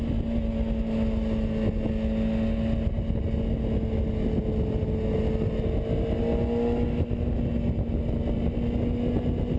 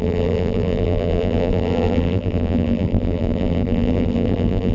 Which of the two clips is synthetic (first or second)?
second